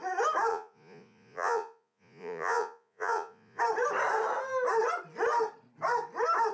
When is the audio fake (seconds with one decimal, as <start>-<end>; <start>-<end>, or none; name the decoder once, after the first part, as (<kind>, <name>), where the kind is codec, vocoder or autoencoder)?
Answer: 0.5-3.6 (vocoder, Vocos)